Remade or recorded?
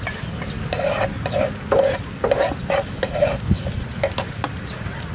recorded